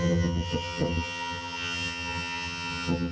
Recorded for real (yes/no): no